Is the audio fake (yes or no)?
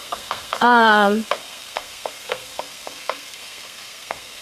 yes